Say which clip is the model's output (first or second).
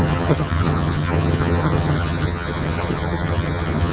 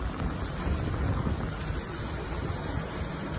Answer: first